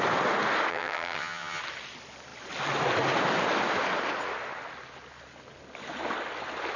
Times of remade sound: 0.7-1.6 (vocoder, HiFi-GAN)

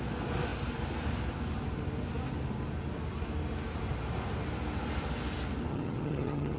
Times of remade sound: 5.7-6.6 (vocoder, HiFi-GAN)

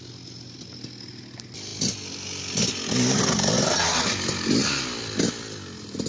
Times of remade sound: none

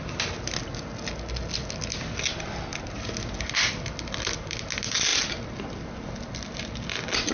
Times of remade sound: none

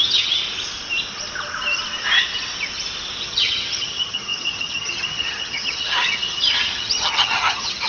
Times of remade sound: 0.0-0.4 (vocoder, HiFi-GAN); 3.2-7.9

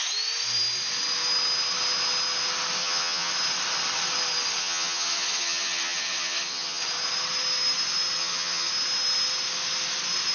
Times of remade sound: 2.8-3.3 (vocoder, HiFi-GAN); 4.6-6.8; 8.2-8.7

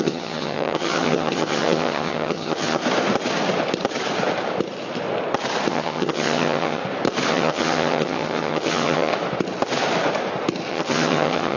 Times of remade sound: 0.0-2.8 (vocoder, HiFi-GAN); 5.7-6.8; 7.3-9.1; 10.7-11.6